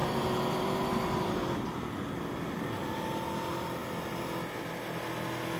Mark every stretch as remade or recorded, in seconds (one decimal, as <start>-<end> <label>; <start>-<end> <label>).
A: 0.0-1.4 remade; 1.4-5.6 recorded